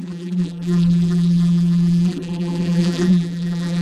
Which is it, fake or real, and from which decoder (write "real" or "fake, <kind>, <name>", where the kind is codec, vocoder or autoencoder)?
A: fake, vocoder, BigVGAN v2